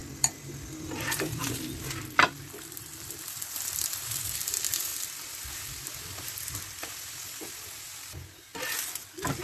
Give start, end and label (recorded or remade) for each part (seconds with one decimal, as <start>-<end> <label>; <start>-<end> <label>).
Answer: 0.0-8.5 remade; 8.5-9.4 recorded